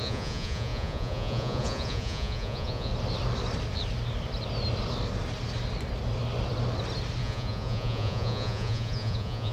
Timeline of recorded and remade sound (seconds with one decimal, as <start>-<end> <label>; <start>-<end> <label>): 0.0-2.9 remade; 2.9-7.2 recorded; 7.2-9.5 remade